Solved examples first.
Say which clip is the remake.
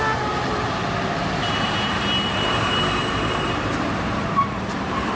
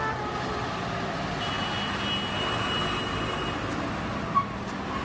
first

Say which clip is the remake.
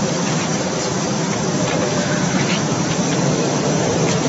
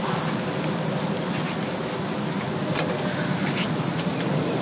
first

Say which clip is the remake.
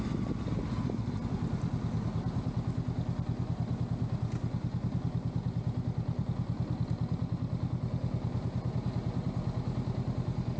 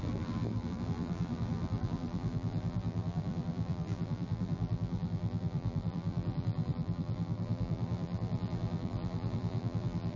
second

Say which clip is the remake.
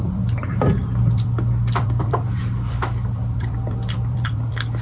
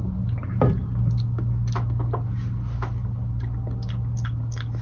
first